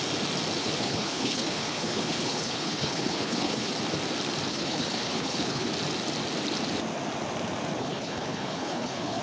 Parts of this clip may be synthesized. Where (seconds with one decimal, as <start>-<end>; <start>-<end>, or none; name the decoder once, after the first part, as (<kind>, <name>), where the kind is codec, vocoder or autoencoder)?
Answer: 0.6-3.7 (codec, HILCodec); 4.5-5.7; 7.8-9.2